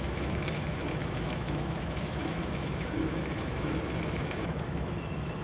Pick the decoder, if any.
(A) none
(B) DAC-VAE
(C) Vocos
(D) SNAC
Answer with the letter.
B